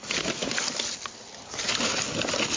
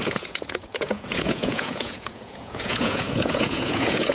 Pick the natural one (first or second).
first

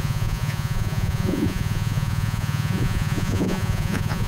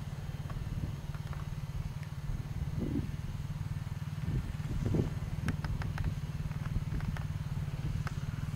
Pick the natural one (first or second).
second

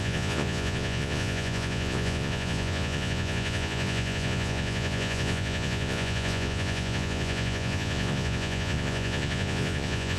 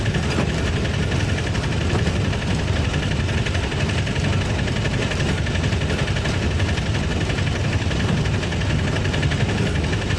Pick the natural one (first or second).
second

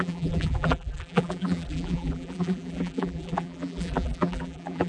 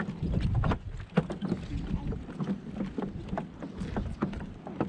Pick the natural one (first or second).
second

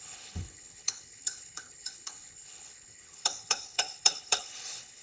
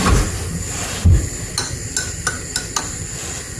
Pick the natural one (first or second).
second